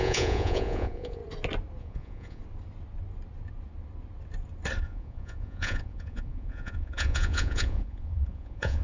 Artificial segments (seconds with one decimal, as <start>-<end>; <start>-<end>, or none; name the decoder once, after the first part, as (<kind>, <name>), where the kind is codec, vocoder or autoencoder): 0.0-1.2 (vocoder, Vocos); 1.8-2.4; 4.8-8.8